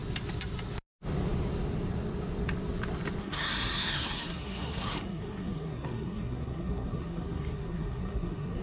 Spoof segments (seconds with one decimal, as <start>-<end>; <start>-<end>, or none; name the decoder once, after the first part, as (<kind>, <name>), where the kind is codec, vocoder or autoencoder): 3.2-8.6 (codec, SNAC)